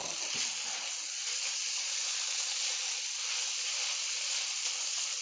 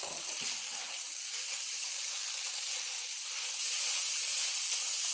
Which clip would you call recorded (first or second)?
first